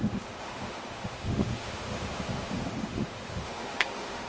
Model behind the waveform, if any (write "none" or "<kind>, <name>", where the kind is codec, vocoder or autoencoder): autoencoder, DAC-VAE